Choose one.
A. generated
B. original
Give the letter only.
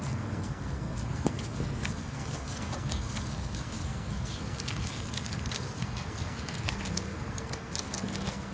A